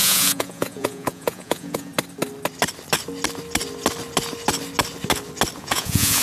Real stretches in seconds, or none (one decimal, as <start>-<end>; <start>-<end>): 1.9-5.6